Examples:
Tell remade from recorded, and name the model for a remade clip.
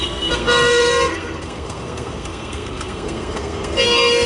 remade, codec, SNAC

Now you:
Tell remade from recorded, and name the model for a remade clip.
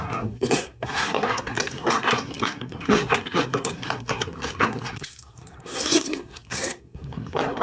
remade, codec, SNAC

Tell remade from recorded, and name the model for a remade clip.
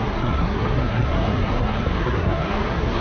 remade, codec, SNAC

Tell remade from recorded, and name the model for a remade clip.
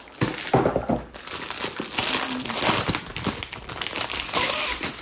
recorded